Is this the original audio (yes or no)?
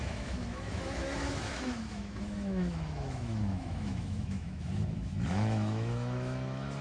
no